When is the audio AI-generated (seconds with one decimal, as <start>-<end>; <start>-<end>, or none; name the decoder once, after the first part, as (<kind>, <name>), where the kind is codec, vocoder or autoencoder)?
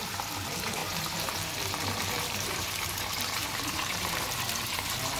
0.0-5.2 (vocoder, BigVGAN v2)